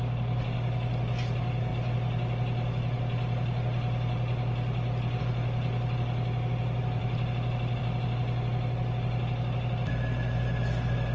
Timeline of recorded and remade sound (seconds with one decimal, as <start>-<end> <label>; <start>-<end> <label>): 0.0-11.1 recorded